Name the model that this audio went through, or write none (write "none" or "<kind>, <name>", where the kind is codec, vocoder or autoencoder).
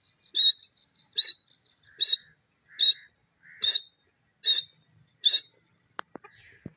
none